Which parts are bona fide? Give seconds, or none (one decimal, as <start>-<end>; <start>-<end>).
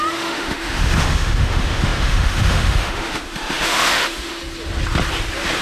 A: 4.4-5.6